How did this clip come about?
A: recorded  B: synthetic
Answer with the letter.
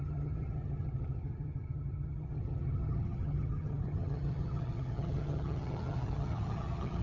B